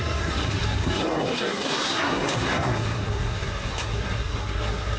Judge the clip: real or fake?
fake